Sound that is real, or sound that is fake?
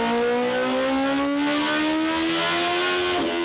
real